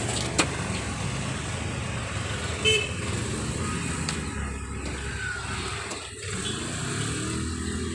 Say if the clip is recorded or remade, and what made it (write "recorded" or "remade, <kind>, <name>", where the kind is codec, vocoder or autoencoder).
recorded